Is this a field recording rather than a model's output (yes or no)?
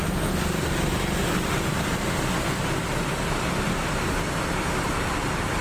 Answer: yes